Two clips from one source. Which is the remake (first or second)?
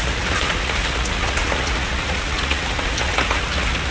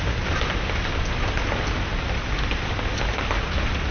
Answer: first